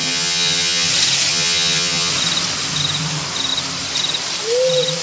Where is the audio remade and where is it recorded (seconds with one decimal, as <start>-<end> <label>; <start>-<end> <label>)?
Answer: 0.0-0.9 remade; 0.9-1.3 recorded; 1.3-2.1 remade; 2.1-5.0 recorded